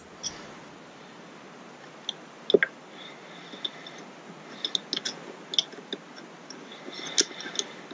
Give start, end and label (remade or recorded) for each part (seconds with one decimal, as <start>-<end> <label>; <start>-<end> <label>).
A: 0.0-7.9 recorded